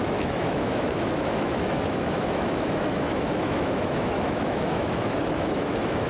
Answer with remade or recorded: remade